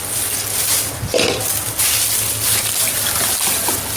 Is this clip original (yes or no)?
yes